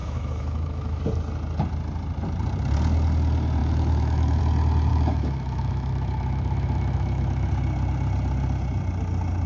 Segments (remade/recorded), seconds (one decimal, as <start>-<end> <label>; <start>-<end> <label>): 0.0-1.0 remade; 1.0-3.6 recorded; 3.6-4.4 remade; 4.4-4.9 recorded; 4.9-7.5 remade; 7.5-9.5 recorded